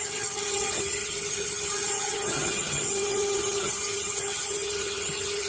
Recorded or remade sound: remade